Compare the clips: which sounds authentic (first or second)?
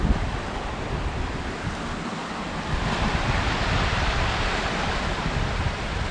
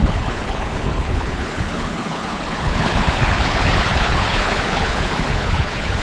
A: first